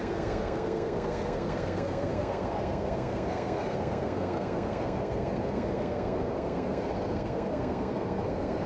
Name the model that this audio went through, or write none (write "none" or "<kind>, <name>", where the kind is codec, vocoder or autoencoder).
codec, SNAC